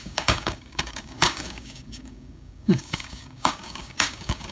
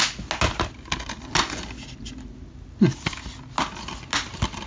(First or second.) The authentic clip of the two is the second